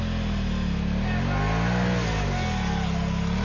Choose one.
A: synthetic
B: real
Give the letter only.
B